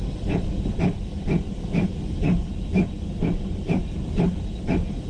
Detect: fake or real real